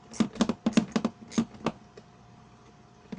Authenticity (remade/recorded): recorded